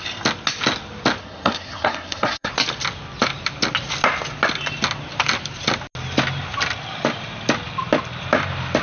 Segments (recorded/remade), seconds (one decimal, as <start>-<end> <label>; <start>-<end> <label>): 0.0-1.2 recorded; 1.2-2.5 remade; 2.5-8.8 recorded